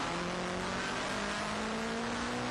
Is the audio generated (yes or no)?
no